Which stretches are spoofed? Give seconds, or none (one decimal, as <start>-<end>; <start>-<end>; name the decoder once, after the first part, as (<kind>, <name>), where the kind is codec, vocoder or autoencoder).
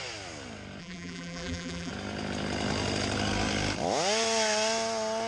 0.8-1.9 (vocoder, BigVGAN v2)